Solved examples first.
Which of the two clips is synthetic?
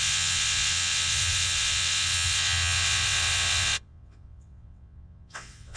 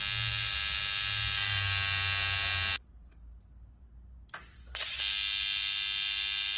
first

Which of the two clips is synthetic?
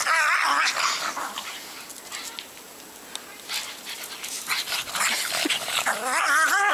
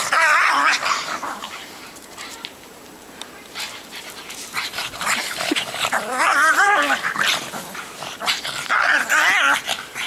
second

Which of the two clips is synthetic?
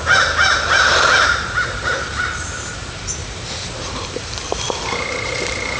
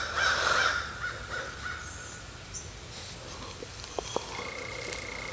first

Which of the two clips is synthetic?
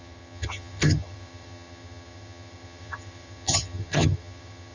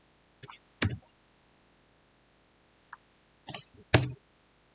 first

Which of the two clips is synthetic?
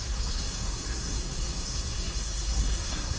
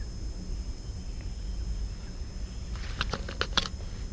first